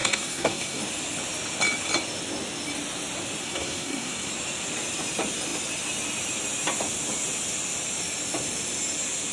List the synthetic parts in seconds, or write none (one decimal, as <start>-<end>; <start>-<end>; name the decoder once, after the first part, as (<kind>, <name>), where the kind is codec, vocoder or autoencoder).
0.0-0.8 (codec, SNAC); 3.4-4.3